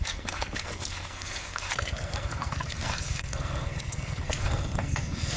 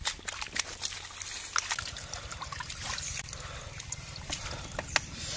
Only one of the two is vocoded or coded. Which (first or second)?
first